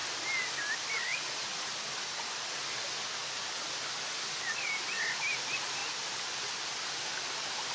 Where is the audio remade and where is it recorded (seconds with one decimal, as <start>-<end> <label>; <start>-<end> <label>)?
0.0-1.1 recorded; 1.1-1.7 remade; 1.7-7.7 recorded